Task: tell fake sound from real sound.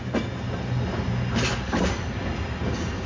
real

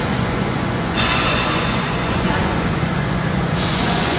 fake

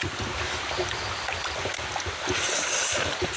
fake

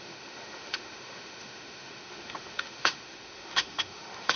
fake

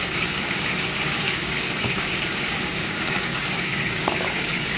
fake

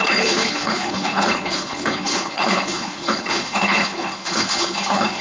fake